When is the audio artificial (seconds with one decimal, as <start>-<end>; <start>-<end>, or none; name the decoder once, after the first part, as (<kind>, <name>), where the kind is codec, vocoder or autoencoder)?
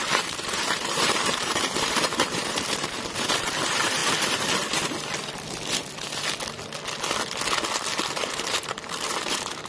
0.0-4.0 (vocoder, BigVGAN v2); 8.1-9.7